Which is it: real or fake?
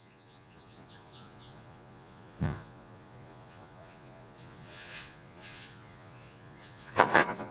fake